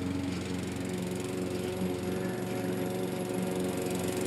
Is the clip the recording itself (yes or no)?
yes